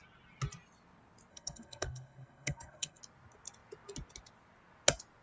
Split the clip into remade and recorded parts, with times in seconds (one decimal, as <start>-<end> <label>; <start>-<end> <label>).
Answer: 0.0-1.3 recorded; 1.3-3.0 remade; 3.0-5.2 recorded